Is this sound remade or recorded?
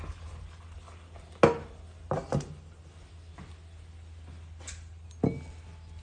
recorded